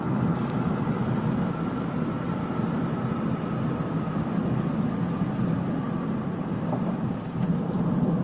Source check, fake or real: real